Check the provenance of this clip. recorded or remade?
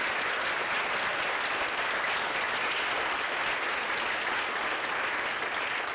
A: recorded